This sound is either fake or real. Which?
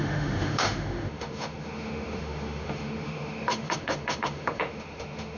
fake